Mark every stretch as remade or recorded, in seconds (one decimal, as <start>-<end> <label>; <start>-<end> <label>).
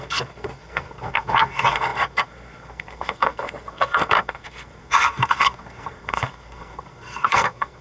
0.0-7.8 remade